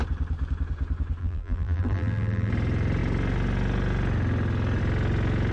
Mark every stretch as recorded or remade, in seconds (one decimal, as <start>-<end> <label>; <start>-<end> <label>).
0.0-1.2 recorded; 1.2-2.5 remade; 2.5-5.5 recorded